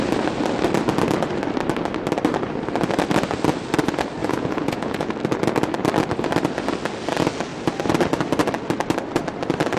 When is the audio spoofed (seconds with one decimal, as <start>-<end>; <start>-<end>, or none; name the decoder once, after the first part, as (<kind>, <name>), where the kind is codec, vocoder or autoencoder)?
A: 4.2-5.1 (vocoder, Vocos)